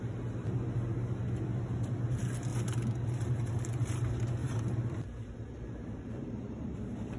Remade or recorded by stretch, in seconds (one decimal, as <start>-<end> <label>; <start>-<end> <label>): 0.0-2.5 recorded; 2.5-3.5 remade; 3.5-4.4 recorded; 4.4-7.2 remade